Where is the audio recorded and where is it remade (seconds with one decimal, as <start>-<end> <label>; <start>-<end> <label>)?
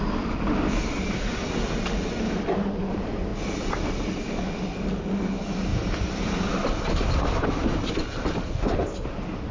0.0-9.5 recorded